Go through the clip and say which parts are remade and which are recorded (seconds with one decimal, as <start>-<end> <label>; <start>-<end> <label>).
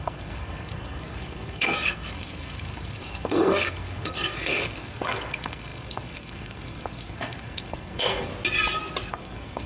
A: 0.0-8.3 remade; 8.3-9.1 recorded; 9.1-9.7 remade